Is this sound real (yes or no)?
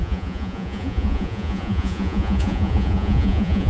no